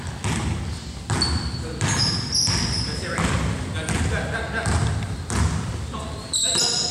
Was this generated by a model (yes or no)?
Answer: no